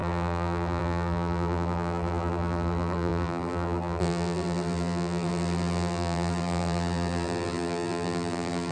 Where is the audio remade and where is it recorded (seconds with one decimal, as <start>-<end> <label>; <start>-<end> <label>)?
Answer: 0.0-8.7 remade